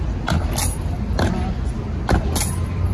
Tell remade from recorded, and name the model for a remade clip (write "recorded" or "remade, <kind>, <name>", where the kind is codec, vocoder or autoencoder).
recorded